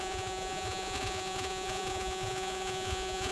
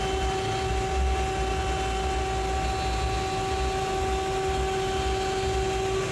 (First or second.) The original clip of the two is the second